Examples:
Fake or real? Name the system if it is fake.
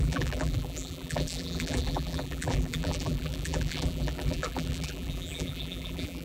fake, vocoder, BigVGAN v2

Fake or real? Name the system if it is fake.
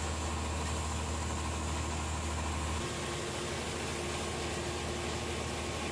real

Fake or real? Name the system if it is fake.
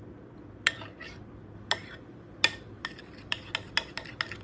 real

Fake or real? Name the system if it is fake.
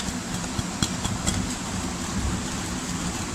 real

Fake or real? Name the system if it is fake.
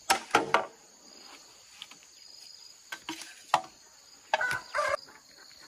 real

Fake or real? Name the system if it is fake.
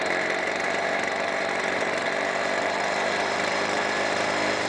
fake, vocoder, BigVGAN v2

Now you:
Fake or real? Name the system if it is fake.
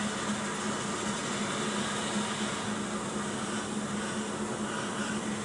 real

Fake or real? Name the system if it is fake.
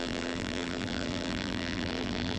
fake, vocoder, BigVGAN v2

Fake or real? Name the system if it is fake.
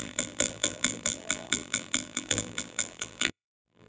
fake, vocoder, BigVGAN v2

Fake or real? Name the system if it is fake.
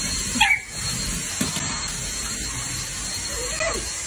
real